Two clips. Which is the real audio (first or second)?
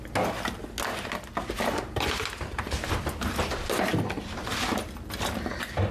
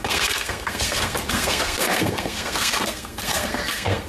first